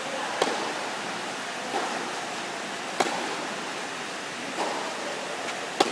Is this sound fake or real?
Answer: real